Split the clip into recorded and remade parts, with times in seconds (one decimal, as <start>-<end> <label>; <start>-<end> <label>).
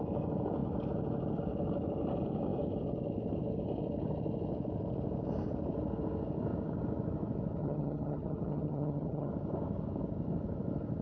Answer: 0.0-7.6 recorded; 7.6-9.3 remade; 9.3-11.0 recorded